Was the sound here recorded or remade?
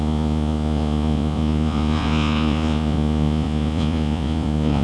remade